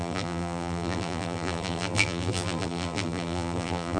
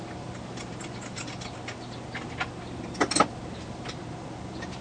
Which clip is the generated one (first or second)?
first